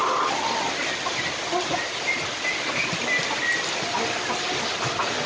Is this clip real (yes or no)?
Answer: yes